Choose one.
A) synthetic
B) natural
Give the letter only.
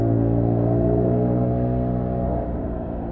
A